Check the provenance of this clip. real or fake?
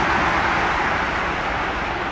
real